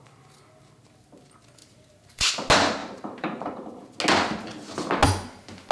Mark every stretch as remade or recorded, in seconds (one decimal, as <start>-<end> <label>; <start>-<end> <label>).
0.0-1.6 recorded; 1.6-2.3 remade; 2.3-2.8 recorded; 2.8-3.8 remade; 3.8-5.7 recorded